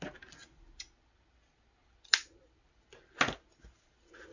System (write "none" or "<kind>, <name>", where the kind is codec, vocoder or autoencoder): none